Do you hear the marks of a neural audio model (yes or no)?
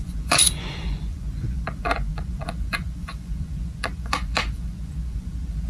yes